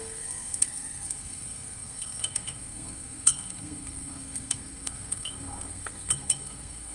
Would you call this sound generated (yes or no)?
yes